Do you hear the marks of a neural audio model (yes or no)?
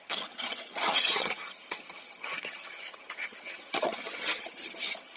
yes